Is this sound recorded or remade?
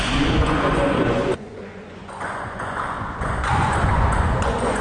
remade